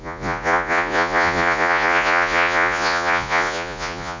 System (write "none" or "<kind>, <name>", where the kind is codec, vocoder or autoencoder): vocoder, Vocos